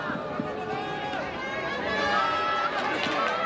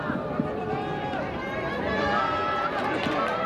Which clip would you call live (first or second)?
first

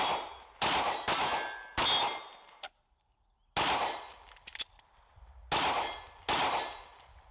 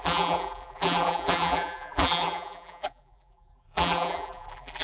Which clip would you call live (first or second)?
first